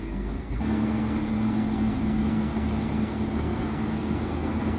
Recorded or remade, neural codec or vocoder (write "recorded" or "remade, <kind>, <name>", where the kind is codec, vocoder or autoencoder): remade, codec, SNAC